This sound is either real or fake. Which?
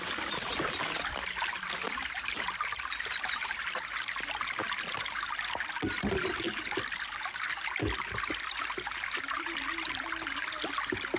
real